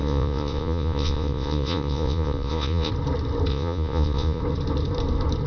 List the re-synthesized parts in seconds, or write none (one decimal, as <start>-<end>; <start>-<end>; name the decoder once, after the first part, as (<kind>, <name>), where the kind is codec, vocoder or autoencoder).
0.0-2.9 (vocoder, Vocos); 3.5-4.4